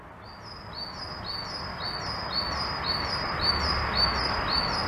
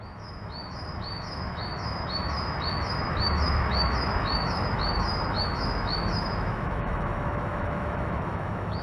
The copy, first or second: second